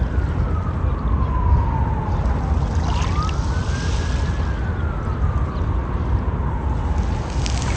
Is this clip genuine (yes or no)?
yes